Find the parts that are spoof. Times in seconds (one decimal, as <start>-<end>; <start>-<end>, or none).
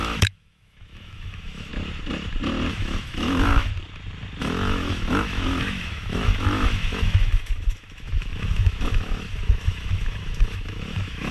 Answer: 0.0-1.7; 2.7-3.7; 4.4-11.3